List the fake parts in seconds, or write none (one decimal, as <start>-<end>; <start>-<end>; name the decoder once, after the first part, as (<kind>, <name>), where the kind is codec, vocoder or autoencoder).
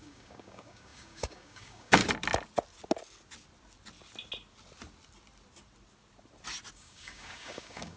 0.0-2.0 (codec, DAC); 6.7-8.0